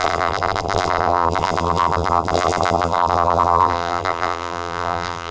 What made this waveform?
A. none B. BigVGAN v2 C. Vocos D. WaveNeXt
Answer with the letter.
B